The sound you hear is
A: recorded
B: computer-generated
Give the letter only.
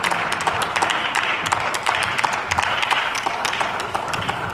B